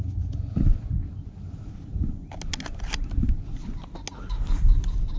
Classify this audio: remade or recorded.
recorded